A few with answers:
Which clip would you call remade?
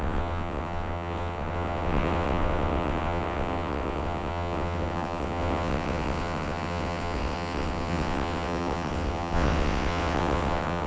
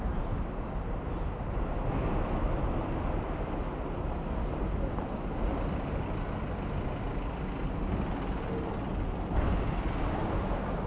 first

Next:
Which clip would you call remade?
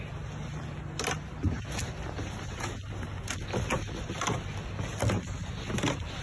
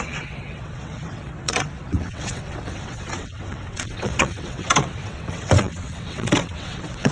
second